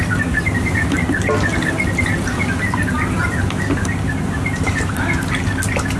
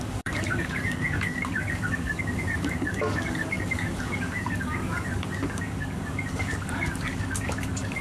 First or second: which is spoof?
second